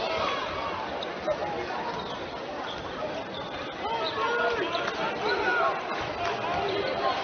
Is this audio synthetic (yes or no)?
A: no